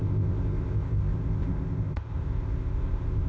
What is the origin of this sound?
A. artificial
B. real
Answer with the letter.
A